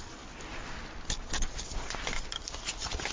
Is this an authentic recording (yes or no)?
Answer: yes